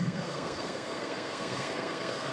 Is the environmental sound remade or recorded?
remade